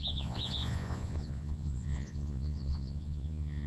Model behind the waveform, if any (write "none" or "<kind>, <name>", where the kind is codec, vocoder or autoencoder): vocoder, Vocos